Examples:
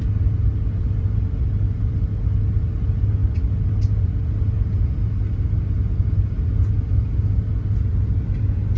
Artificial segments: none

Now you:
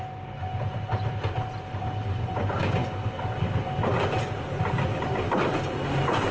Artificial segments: none

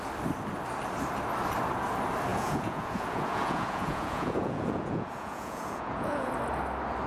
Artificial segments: 2.3-6.3

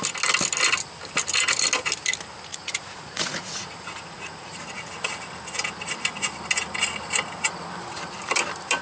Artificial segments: 2.5-4.6

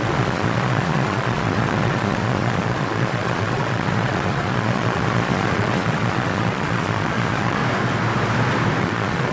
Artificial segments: 0.0-7.6; 8.8-9.3

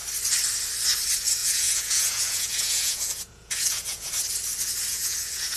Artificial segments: 1.4-4.1; 4.9-5.6

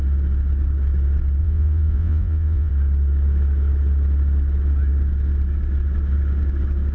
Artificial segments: 1.4-2.7